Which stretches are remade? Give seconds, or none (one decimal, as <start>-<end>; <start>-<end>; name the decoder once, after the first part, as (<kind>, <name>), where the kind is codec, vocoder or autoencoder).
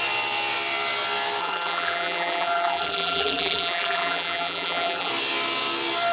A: 1.4-5.1 (vocoder, BigVGAN v2)